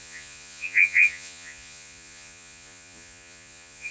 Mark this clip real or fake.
fake